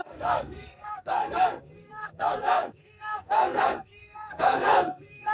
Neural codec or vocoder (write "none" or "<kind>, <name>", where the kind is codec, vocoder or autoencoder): codec, SNAC